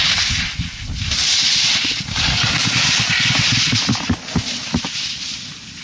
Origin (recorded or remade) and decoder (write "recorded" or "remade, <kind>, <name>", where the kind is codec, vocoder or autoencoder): recorded